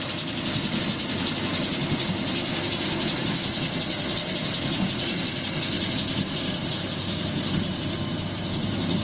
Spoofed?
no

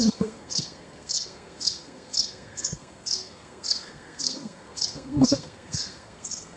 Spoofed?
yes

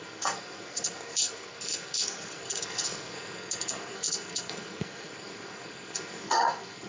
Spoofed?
yes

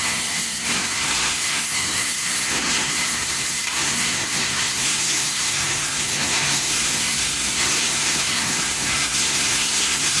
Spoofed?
yes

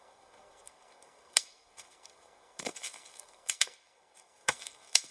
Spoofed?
yes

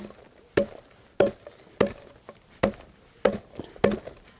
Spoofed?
no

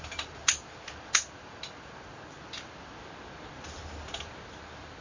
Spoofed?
no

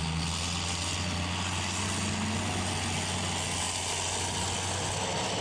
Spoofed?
no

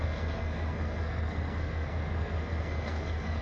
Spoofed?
yes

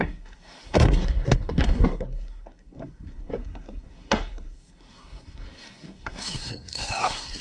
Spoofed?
yes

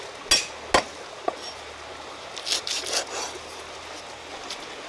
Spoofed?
no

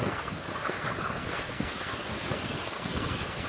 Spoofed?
yes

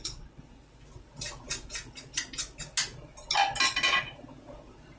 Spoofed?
no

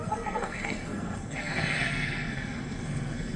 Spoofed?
yes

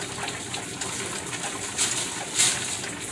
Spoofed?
no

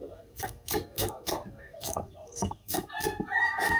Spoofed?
yes